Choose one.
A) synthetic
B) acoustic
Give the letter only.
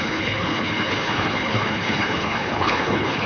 A